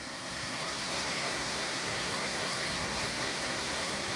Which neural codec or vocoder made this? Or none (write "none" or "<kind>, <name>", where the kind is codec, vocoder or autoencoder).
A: codec, SNAC